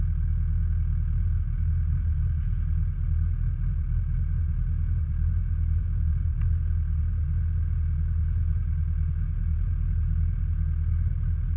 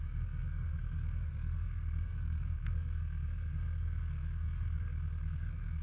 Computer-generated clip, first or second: second